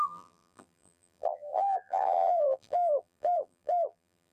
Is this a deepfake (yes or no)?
yes